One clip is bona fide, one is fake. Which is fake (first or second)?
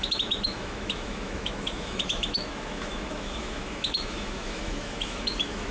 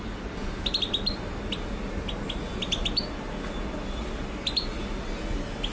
first